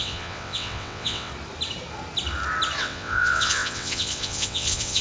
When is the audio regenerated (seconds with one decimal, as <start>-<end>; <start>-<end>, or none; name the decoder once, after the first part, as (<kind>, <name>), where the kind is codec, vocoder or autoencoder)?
0.0-1.3 (vocoder, WaveNeXt); 2.8-5.0